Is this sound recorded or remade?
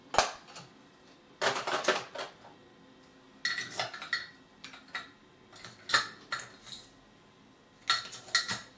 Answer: recorded